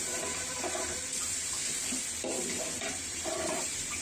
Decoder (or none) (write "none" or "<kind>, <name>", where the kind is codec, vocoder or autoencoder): vocoder, BigVGAN v2